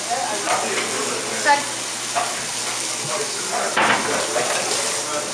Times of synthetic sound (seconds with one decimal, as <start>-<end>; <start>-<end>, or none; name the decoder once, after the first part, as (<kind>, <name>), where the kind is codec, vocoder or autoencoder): none